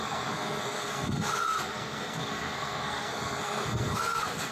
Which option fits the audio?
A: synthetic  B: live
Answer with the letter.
A